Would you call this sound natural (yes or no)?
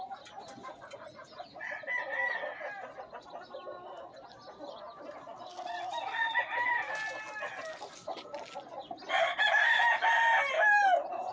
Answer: yes